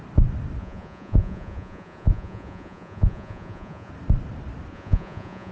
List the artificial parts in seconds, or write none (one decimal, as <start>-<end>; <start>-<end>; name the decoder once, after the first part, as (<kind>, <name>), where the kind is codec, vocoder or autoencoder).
0.6-3.9 (vocoder, Vocos); 4.7-5.5